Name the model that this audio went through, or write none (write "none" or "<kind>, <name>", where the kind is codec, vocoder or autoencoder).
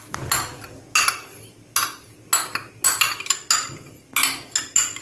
none